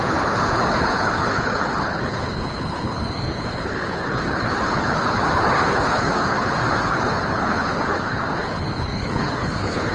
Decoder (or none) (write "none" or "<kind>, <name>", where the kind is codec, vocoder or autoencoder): codec, HILCodec